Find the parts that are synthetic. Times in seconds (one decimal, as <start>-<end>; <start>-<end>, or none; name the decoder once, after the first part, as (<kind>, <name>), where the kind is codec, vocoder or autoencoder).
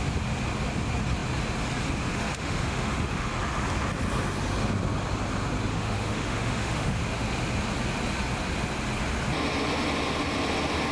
2.1-3.3 (autoencoder, DAC-VAE); 5.7-7.0